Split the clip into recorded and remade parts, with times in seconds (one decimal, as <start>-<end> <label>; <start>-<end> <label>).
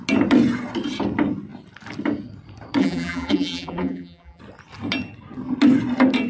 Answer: 0.0-2.8 recorded; 2.8-4.4 remade; 4.4-6.3 recorded